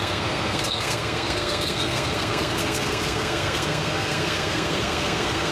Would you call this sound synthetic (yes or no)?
yes